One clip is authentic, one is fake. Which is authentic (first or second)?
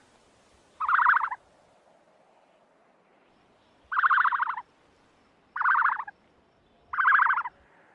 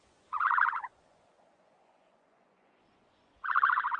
first